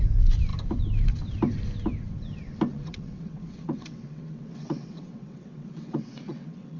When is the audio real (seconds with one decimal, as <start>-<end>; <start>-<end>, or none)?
0.0-2.7